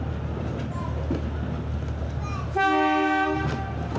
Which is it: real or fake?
real